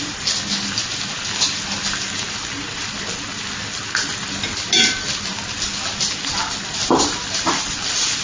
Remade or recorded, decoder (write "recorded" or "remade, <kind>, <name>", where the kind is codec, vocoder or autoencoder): recorded